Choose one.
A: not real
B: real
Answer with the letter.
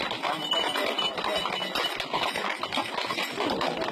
B